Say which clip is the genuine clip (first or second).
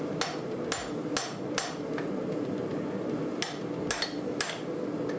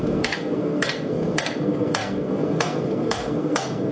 first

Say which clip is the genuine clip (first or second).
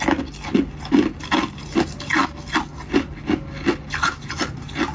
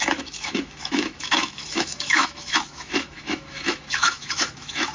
first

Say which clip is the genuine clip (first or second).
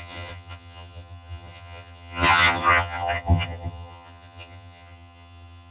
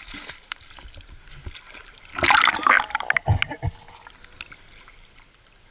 second